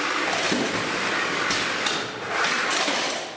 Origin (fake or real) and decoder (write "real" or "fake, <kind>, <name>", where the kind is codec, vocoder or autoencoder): real